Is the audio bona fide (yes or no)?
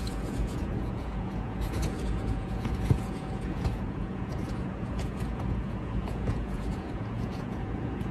no